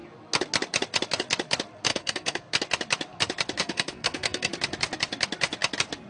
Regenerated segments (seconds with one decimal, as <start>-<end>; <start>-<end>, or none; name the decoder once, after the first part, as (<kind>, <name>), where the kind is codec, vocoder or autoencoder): 1.9-2.4 (codec, SNAC); 3.6-4.5